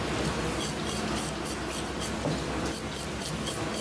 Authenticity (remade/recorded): recorded